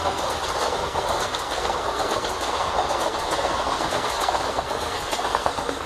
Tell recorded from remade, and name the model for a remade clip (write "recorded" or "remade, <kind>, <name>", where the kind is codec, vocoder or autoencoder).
remade, codec, SNAC